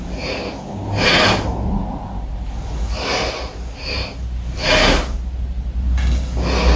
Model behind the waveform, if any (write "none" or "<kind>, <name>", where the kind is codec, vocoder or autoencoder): none